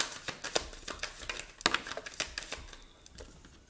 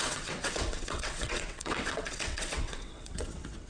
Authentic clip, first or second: first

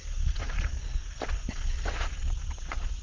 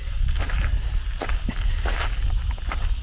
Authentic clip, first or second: second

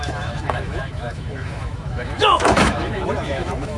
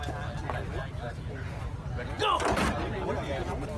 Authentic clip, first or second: second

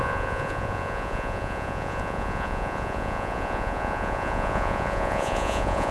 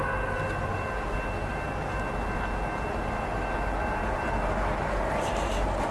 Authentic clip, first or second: second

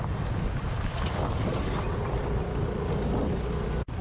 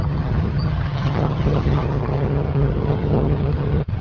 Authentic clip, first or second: first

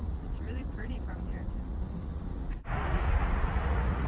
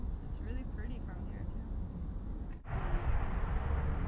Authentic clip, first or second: second